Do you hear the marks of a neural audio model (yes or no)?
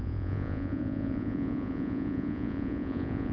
yes